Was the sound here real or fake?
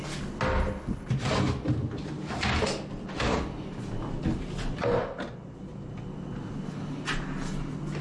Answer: real